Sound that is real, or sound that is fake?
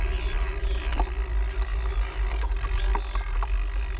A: real